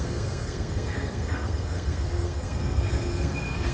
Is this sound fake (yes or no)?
yes